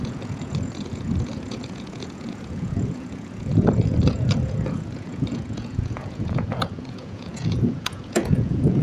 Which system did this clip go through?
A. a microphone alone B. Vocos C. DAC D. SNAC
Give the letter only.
B